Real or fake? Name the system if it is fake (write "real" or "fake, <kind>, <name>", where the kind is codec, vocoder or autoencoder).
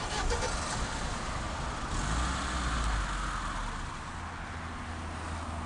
real